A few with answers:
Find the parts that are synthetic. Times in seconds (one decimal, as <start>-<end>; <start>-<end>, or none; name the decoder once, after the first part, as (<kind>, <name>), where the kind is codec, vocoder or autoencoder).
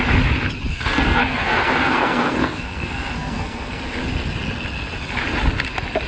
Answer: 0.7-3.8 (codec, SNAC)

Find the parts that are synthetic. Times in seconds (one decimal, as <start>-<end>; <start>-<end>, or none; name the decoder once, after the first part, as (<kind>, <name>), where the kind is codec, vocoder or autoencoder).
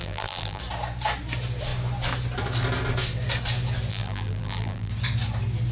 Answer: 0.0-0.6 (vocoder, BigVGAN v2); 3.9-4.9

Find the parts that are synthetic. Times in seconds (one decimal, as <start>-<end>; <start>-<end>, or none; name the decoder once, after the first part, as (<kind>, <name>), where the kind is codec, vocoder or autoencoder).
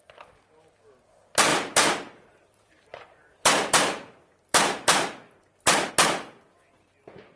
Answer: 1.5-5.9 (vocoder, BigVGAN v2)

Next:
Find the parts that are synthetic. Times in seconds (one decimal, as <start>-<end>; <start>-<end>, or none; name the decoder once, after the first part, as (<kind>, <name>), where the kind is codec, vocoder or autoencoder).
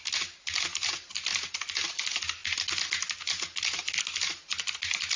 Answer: none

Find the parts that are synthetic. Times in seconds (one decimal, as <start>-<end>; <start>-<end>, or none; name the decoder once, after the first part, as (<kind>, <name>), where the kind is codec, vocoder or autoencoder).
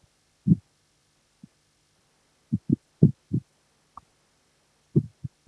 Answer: none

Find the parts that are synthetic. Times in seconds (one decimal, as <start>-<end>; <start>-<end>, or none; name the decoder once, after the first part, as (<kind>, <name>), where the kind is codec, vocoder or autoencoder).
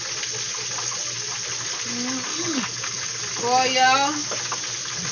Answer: 2.3-3.2 (codec, HILCodec)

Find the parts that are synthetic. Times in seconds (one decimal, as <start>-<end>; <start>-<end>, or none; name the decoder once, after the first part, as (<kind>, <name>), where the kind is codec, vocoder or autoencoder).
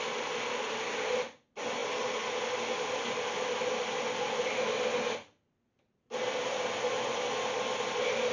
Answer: none